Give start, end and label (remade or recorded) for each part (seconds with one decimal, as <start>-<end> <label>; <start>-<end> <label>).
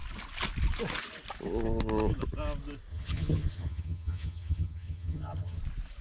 0.0-2.9 recorded; 2.9-5.6 remade; 5.6-6.0 recorded